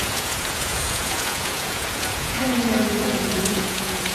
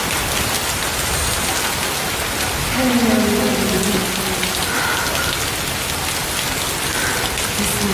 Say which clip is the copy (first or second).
first